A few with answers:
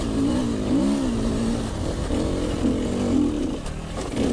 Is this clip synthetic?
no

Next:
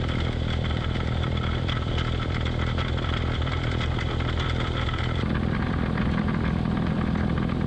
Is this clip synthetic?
yes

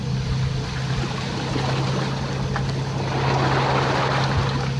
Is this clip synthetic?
no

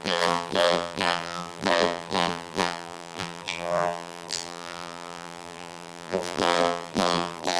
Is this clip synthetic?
yes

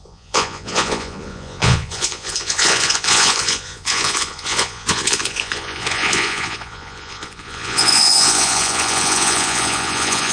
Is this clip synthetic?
yes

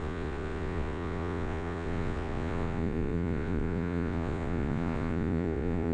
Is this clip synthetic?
yes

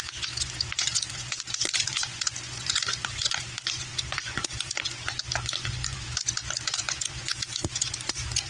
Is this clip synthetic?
yes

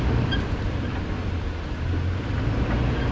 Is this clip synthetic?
no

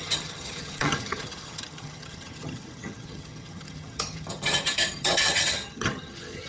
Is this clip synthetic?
yes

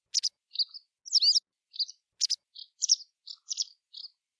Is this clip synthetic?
no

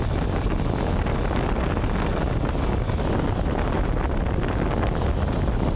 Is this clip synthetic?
no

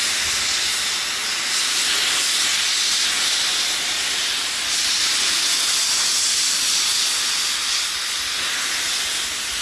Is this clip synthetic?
no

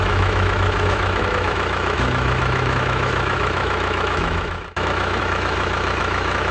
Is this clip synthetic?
yes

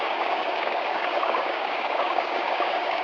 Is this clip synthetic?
yes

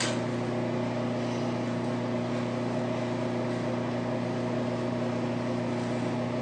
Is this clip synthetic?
no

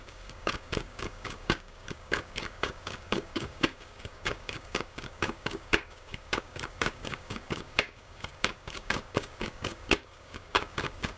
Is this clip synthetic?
yes